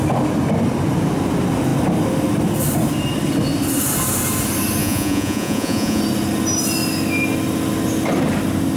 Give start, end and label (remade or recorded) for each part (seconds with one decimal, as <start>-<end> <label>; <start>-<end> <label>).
0.0-4.8 recorded; 4.8-6.0 remade; 6.0-8.8 recorded